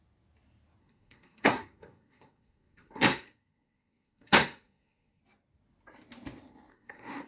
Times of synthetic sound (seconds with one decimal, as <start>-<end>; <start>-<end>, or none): 0.8-5.2; 6.7-7.3